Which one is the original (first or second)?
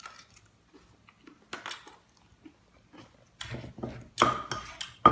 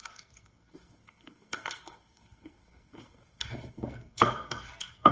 first